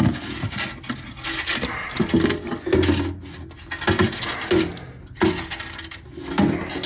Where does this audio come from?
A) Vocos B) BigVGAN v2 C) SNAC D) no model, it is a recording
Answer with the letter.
D